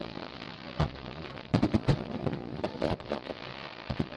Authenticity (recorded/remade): remade